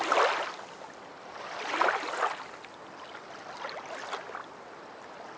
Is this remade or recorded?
recorded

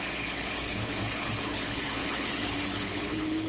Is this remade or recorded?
remade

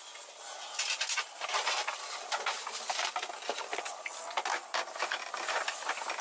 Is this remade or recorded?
recorded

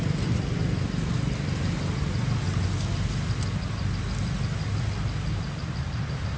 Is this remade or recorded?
recorded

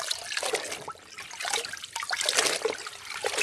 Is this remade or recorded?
recorded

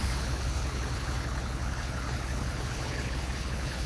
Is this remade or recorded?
remade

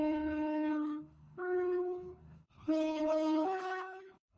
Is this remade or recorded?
remade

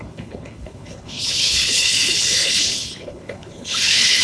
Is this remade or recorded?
remade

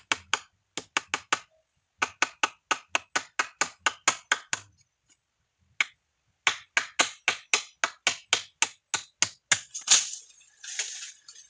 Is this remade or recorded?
recorded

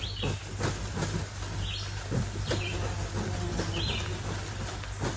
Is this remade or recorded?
recorded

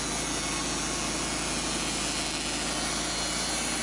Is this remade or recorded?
recorded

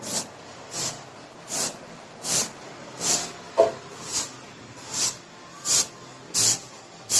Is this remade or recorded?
recorded